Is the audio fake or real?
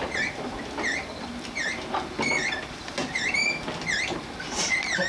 real